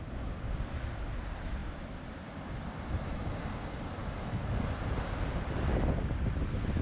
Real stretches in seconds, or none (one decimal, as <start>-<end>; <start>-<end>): 0.0-1.6; 3.4-6.8